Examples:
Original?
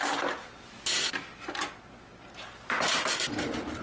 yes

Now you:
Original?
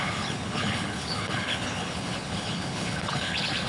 no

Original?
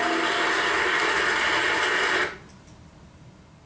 yes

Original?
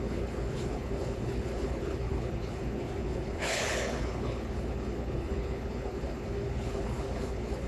no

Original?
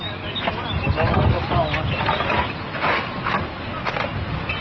yes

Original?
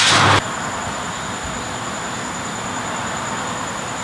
yes